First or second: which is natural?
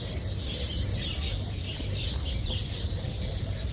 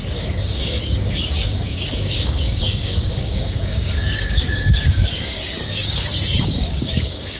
first